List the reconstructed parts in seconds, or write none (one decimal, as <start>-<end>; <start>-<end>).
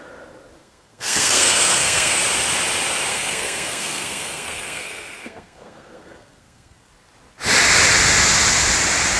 0.6-2.2; 3.1-6.9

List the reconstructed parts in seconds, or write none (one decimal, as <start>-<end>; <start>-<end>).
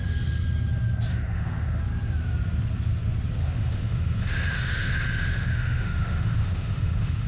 1.1-1.8; 3.4-7.3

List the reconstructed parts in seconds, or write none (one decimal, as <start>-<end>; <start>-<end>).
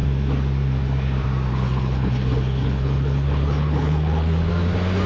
1.5-4.5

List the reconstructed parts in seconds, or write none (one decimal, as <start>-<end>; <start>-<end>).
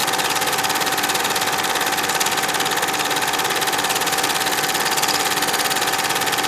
none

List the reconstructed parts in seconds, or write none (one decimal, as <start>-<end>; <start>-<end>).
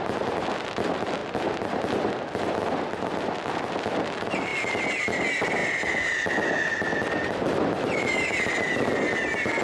none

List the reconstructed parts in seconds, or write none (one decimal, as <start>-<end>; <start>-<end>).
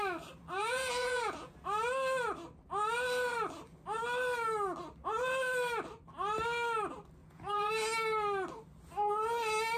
0.6-1.5; 7.2-7.7